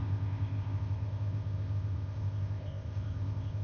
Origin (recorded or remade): remade